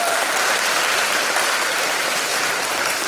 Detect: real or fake fake